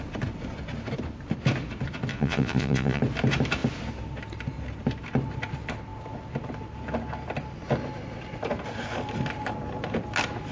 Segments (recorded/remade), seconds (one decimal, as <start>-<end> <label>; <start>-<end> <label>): 0.0-2.1 recorded; 2.1-3.0 remade; 3.0-10.5 recorded